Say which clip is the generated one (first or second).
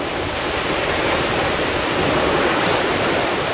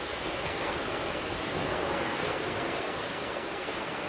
second